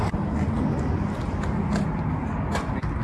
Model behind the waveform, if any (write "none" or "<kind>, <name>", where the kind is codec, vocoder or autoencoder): none